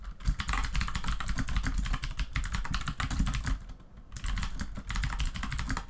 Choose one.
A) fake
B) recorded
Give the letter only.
B